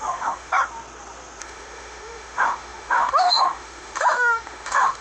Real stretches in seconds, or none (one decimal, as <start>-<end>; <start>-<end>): 0.5-1.4

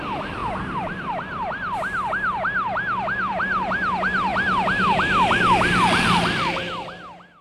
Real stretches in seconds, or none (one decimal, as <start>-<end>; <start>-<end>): 0.0-7.4

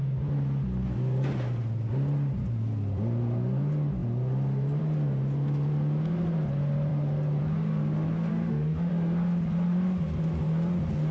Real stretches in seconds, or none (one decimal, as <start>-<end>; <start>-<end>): 0.0-8.3; 8.9-11.1

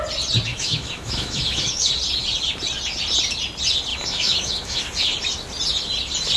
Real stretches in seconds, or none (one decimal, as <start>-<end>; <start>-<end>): 0.0-0.5; 1.9-3.9; 4.8-6.4